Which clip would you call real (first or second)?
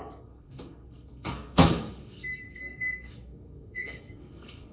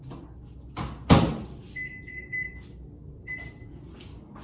second